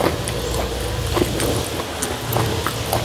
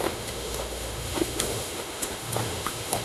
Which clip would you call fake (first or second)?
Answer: second